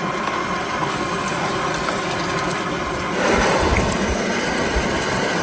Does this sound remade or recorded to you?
recorded